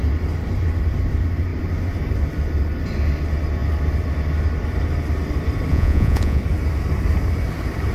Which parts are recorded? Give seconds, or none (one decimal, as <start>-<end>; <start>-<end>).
0.0-5.7; 6.4-7.9